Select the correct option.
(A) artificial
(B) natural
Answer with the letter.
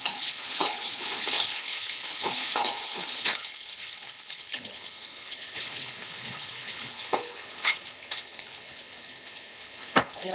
A